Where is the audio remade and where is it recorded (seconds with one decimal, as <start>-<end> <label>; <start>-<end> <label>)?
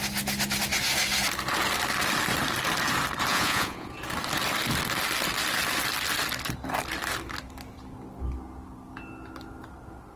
0.0-3.3 recorded; 3.3-3.9 remade; 3.9-10.2 recorded